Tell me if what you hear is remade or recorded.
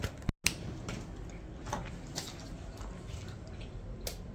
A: recorded